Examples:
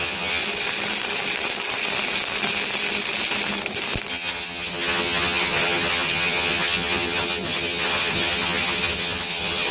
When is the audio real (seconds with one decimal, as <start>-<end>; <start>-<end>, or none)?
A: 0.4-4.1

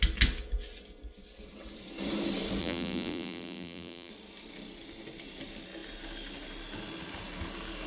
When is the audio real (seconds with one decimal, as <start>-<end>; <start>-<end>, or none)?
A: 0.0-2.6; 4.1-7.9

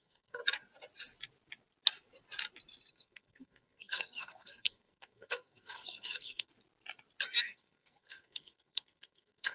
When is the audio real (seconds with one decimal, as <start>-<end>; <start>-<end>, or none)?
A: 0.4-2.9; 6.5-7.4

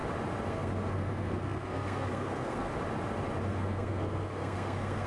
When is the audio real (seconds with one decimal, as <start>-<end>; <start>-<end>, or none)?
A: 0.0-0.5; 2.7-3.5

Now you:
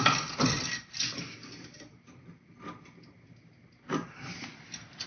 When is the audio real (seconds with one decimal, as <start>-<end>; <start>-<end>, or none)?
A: 0.0-5.1

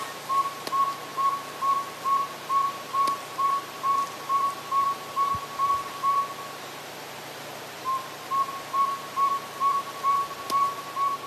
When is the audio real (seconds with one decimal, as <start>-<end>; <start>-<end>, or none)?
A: 0.0-11.3

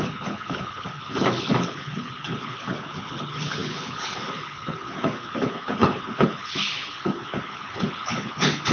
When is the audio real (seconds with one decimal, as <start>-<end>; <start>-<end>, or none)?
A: none

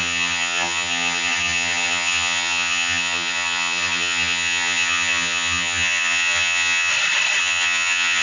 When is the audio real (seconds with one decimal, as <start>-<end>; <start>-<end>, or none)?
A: 6.9-7.4